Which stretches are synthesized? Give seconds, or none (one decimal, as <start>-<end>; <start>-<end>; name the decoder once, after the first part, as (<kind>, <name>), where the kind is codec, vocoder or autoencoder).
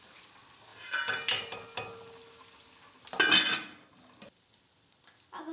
none